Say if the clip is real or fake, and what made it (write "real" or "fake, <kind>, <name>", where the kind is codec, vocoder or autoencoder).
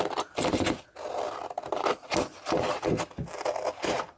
real